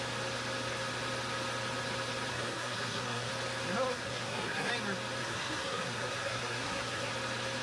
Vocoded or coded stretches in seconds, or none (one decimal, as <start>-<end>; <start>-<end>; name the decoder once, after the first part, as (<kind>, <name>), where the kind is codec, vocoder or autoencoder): 2.3-3.3 (codec, SNAC); 3.9-4.7; 5.2-7.1